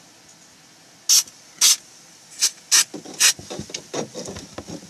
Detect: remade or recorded recorded